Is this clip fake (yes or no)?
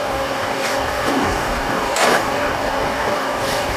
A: yes